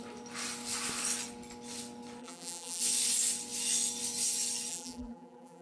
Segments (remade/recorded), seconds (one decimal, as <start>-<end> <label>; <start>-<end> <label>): 0.0-2.2 recorded; 2.2-2.8 remade; 2.8-4.7 recorded; 4.7-5.6 remade